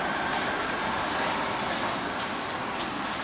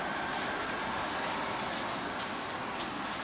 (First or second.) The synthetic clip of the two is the first